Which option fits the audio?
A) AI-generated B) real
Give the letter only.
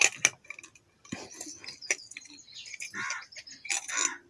B